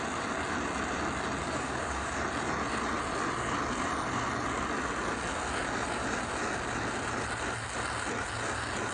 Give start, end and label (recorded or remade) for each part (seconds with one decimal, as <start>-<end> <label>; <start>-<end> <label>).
0.0-1.4 recorded; 1.4-2.1 remade; 2.1-8.9 recorded